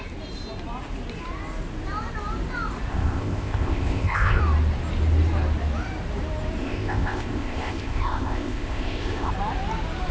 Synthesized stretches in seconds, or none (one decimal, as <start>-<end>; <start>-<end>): 2.9-4.4; 6.6-9.3